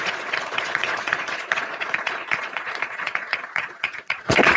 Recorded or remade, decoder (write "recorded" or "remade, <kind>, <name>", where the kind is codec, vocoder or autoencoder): remade, vocoder, Vocos